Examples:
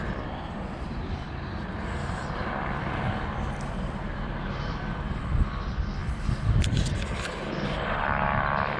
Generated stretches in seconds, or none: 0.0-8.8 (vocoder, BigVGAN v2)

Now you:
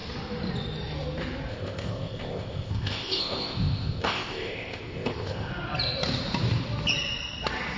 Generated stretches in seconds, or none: 1.5-5.5 (codec, ZipCodec)

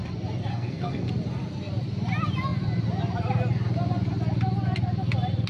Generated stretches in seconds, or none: 0.5-1.1 (codec, SNAC)